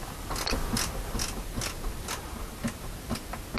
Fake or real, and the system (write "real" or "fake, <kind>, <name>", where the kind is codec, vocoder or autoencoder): real